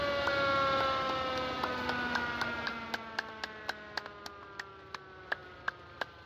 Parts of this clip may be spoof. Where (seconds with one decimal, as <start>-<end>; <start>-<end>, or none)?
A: none